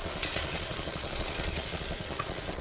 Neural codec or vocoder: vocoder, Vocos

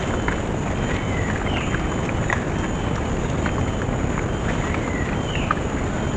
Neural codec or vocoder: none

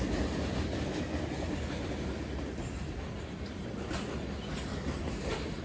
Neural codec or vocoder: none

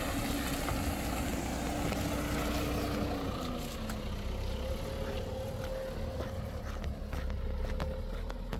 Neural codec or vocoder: none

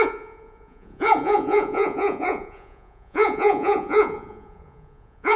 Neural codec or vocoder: vocoder, Vocos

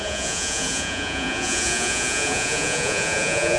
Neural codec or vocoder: vocoder, Vocos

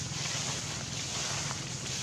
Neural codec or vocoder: none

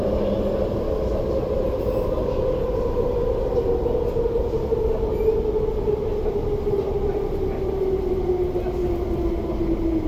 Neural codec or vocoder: none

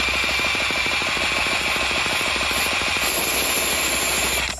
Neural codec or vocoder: none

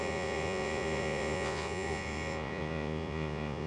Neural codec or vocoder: vocoder, Vocos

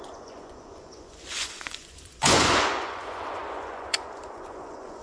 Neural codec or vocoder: vocoder, Vocos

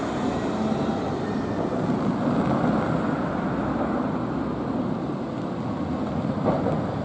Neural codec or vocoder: none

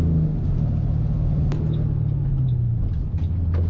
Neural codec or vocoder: none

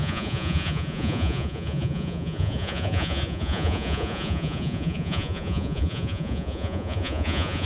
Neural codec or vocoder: vocoder, Vocos